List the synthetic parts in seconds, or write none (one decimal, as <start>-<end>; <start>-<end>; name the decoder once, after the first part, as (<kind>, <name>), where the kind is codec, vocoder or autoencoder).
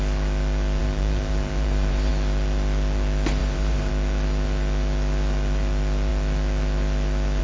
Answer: 0.8-2.1 (vocoder, BigVGAN v2); 3.4-3.9